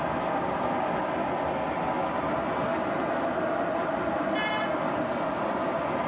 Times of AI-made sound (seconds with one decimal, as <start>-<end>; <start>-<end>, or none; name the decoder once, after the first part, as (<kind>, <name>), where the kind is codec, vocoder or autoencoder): none